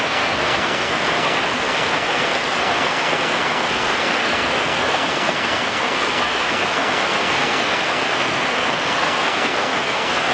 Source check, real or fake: fake